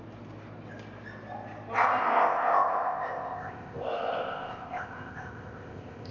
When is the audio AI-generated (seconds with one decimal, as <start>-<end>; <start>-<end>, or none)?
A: 2.0-6.1